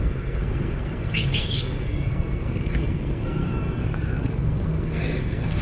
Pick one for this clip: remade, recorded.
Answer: remade